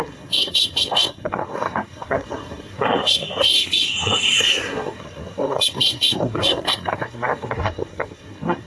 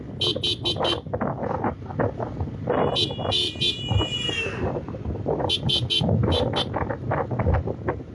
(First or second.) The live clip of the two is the second